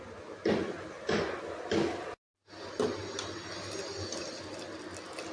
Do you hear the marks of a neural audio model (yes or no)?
no